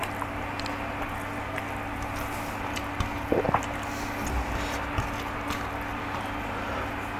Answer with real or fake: real